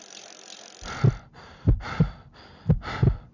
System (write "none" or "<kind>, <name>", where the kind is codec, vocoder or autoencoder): none